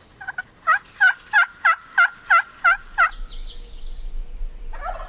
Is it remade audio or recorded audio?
recorded